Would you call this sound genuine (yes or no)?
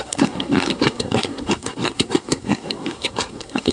no